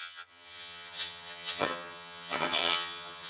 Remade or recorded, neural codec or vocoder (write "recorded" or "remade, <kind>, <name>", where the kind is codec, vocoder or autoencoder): remade, vocoder, HiFi-GAN